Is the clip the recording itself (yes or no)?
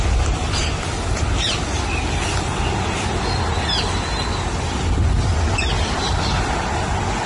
yes